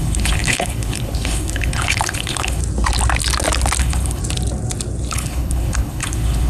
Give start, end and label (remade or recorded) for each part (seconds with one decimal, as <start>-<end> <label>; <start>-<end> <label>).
0.0-2.6 remade; 2.6-3.8 recorded; 3.8-4.2 remade; 4.2-5.1 recorded; 5.1-6.5 remade